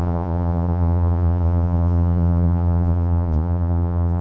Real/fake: fake